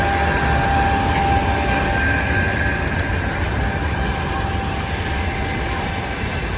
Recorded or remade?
recorded